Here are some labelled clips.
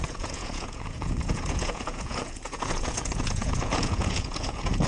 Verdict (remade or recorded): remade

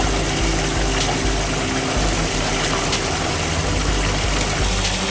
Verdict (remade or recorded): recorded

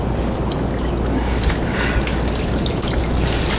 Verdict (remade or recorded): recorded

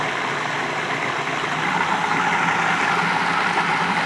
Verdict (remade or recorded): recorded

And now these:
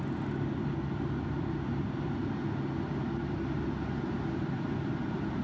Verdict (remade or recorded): recorded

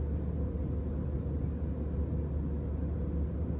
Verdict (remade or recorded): recorded